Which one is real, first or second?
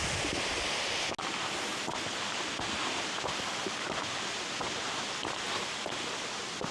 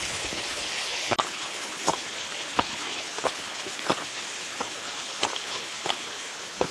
first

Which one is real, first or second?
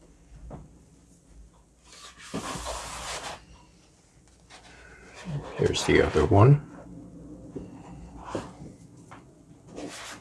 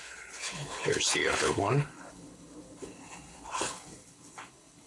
first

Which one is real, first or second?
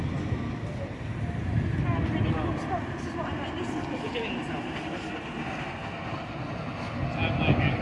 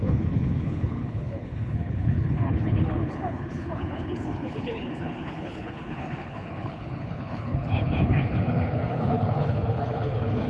first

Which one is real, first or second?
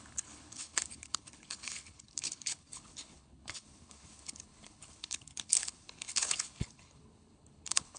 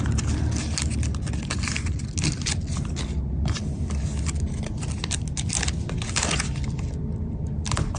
second